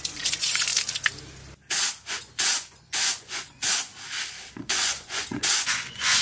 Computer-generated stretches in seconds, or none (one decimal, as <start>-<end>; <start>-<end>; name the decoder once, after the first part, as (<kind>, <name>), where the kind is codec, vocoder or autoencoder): 0.0-0.7 (vocoder, Vocos); 2.1-3.9; 4.5-6.2